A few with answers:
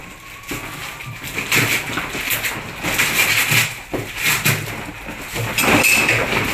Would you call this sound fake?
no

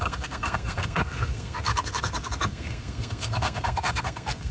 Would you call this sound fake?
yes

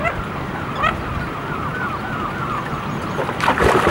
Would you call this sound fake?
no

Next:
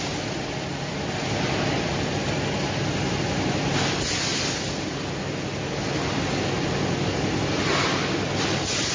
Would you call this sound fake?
no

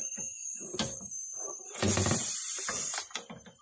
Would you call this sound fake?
no